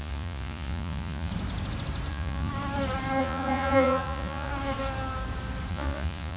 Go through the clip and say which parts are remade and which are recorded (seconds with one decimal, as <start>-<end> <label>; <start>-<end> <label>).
0.0-1.3 remade; 1.3-2.1 recorded; 2.1-2.5 remade; 2.5-3.2 recorded; 3.2-4.5 remade; 4.5-5.7 recorded; 5.7-6.4 remade

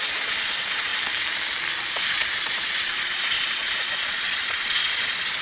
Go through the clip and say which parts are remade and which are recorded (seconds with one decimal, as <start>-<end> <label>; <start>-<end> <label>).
0.0-0.9 remade; 0.9-1.9 recorded; 1.9-5.4 remade

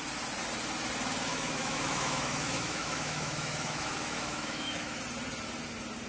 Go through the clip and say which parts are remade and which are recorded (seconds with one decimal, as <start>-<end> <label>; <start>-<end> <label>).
0.0-1.3 recorded; 1.3-5.0 remade; 5.0-6.1 recorded

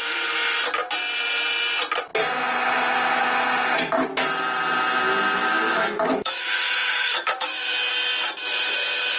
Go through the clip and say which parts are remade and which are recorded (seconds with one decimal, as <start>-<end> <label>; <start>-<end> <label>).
0.0-5.4 recorded; 5.4-7.9 remade; 7.9-8.4 recorded; 8.4-9.2 remade